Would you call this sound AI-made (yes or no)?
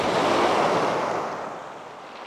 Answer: no